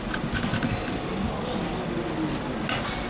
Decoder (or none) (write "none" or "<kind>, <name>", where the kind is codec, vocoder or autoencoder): none